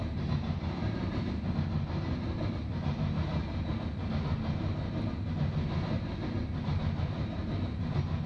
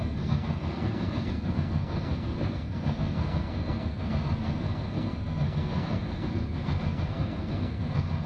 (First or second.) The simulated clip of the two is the second